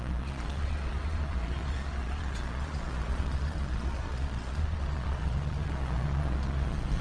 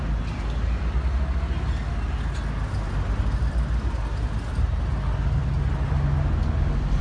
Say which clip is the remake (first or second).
first